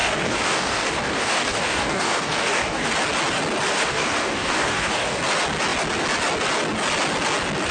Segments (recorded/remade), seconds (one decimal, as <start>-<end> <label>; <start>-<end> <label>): 0.0-2.9 remade; 2.9-3.7 recorded; 3.7-5.2 remade; 5.2-7.7 recorded